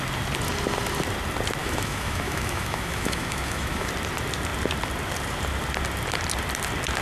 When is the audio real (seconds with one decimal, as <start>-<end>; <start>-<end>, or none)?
0.0-1.6; 3.9-7.0